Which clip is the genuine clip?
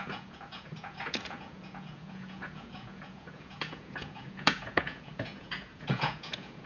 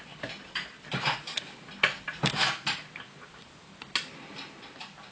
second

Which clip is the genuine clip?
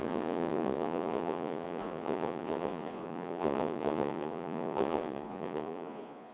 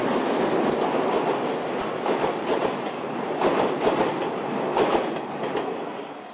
second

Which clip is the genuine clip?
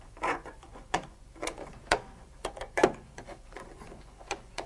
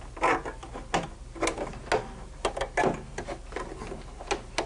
second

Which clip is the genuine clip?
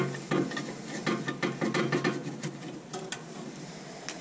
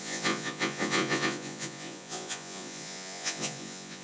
first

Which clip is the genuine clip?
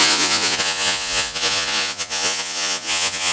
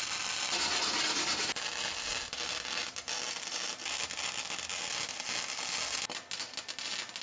second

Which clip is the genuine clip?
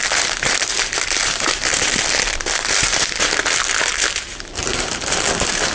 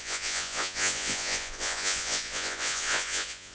first